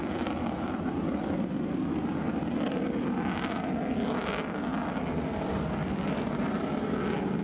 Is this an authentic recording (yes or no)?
yes